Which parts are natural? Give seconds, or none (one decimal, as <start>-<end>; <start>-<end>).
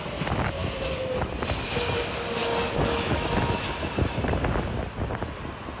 0.0-0.6; 1.3-2.4; 3.5-5.8